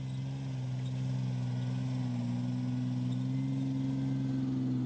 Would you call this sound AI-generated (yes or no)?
no